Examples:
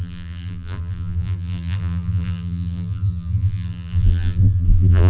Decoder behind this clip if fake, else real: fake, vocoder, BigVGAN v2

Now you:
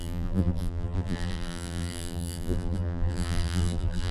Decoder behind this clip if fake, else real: fake, vocoder, BigVGAN v2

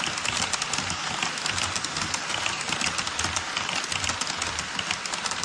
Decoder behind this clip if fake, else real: real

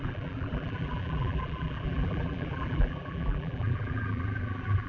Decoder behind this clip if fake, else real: fake, vocoder, BigVGAN v2